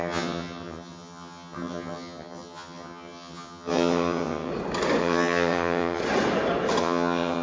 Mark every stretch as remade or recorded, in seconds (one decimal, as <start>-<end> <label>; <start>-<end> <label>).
0.0-4.5 remade; 4.5-5.0 recorded; 5.0-6.0 remade; 6.0-6.8 recorded; 6.8-7.4 remade

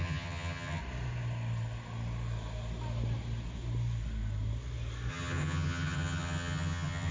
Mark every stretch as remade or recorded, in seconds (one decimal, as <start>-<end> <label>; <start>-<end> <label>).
0.0-0.8 remade; 0.8-5.1 recorded; 5.1-7.1 remade